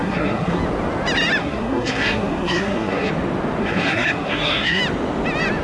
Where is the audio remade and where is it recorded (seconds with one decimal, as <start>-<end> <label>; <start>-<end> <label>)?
0.0-0.6 remade; 0.6-1.4 recorded; 1.4-3.1 remade; 3.1-3.6 recorded; 3.6-4.8 remade; 4.8-5.6 recorded